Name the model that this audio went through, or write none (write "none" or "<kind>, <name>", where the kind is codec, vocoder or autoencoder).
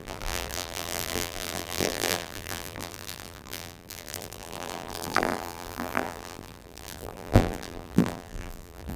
vocoder, BigVGAN v2